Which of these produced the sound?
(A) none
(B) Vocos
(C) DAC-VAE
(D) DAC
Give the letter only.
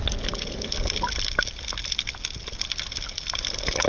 A